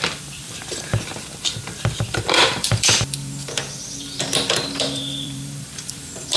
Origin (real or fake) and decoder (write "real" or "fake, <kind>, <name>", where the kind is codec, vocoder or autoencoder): fake, vocoder, BigVGAN v2